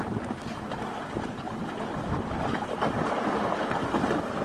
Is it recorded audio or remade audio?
recorded